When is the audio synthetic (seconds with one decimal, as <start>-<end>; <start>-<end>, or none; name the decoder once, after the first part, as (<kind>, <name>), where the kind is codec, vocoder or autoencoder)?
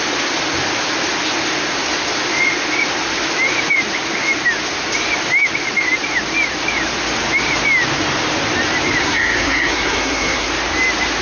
9.0-10.5 (codec, SNAC)